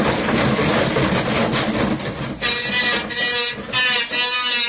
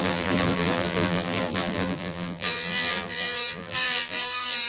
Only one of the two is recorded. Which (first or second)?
first